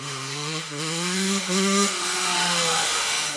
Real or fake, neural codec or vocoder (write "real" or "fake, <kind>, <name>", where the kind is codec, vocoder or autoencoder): fake, autoencoder, DAC-VAE